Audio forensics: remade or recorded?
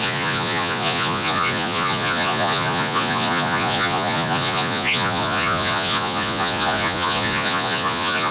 remade